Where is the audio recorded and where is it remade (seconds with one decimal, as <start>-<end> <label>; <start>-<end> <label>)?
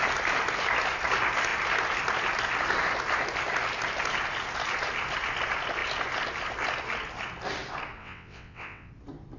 0.0-8.0 recorded; 8.0-8.9 remade; 8.9-9.4 recorded